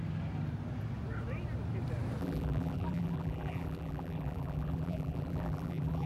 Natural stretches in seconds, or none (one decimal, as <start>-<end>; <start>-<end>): 0.0-2.2